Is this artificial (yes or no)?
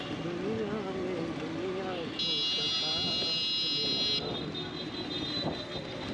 no